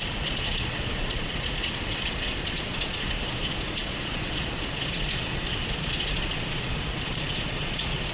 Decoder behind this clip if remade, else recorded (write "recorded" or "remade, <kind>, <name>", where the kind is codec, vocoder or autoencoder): remade, vocoder, Vocos